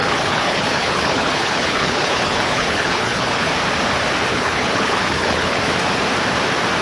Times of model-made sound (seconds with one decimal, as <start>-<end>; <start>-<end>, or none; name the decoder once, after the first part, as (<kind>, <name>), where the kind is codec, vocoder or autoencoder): 0.0-3.5 (codec, HILCodec); 4.3-5.6